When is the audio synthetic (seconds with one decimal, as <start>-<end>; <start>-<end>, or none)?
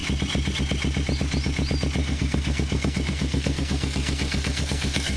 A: 2.0-5.2